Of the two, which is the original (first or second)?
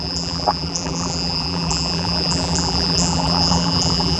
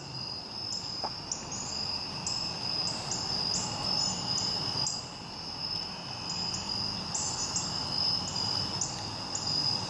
second